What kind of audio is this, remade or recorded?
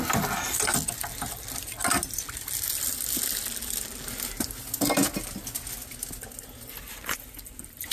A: recorded